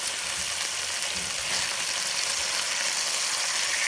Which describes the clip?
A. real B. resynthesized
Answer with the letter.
A